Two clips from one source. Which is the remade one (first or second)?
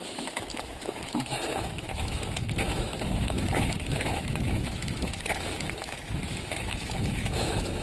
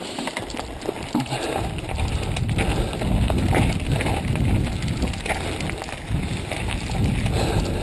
first